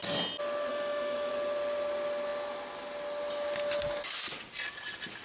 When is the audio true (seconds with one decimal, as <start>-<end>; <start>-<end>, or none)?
0.0-0.7; 1.3-5.2